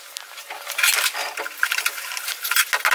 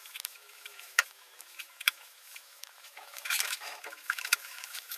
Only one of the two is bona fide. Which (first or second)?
first